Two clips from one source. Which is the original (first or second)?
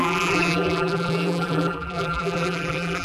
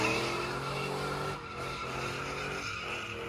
second